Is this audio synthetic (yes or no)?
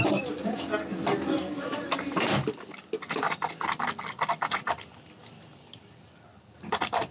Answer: no